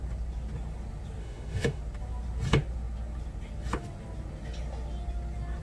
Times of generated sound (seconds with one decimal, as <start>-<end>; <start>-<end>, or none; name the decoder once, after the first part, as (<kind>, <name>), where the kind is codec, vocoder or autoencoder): 1.2-1.8 (autoencoder, DAC-VAE)